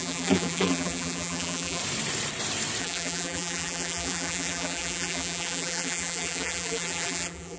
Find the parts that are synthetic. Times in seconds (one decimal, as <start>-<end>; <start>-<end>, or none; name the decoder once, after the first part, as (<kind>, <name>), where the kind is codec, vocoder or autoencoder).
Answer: 0.0-1.8 (vocoder, BigVGAN v2); 2.8-7.6